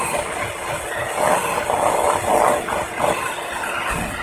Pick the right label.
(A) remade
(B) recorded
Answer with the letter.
B